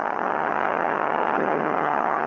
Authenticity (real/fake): fake